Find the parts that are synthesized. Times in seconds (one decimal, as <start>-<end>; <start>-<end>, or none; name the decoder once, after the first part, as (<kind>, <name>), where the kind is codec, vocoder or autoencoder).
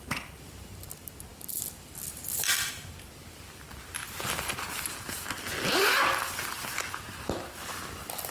none